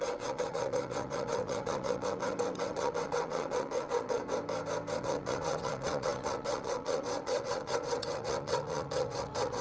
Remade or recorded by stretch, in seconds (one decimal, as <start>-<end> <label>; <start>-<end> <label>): 0.0-4.2 remade; 4.2-5.0 recorded; 5.0-9.6 remade